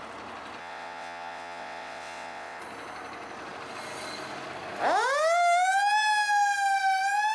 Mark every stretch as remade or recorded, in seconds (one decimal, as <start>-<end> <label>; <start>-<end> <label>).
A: 0.0-0.6 recorded; 0.6-2.6 remade; 2.6-7.3 recorded